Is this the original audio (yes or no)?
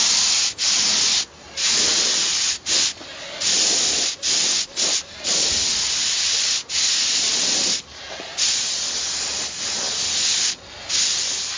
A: yes